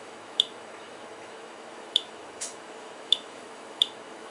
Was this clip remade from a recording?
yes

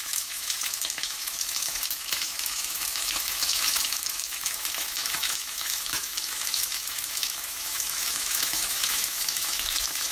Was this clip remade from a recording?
yes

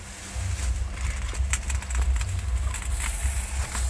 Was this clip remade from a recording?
no